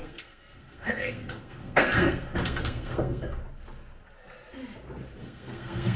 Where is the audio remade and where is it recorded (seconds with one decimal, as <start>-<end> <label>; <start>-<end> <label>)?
0.0-3.4 remade; 3.4-5.2 recorded; 5.2-6.0 remade